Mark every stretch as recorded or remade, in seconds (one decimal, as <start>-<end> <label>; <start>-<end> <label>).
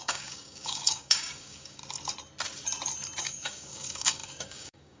0.0-1.8 remade; 1.8-3.2 recorded; 3.2-5.0 remade